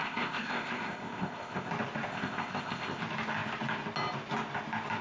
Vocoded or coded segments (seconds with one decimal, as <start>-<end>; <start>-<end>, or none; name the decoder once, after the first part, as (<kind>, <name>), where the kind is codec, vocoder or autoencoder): 0.0-1.7 (codec, ZipCodec); 2.1-3.0